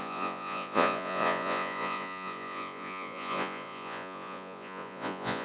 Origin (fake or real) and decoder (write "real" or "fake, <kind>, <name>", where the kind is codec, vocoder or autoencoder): fake, vocoder, Vocos